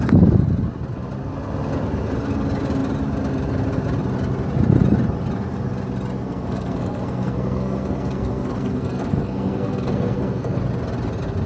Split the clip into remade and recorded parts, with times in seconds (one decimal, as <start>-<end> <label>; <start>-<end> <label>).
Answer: 0.0-6.2 recorded; 6.2-10.6 remade; 10.6-11.5 recorded